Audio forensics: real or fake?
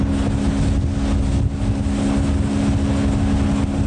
real